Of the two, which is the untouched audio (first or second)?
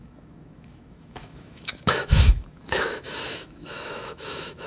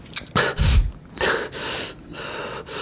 second